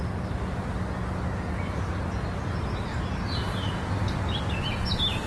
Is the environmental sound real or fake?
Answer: real